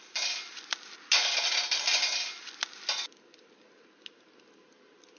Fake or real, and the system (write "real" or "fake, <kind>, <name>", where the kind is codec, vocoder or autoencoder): real